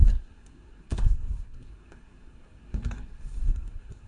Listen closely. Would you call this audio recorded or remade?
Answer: remade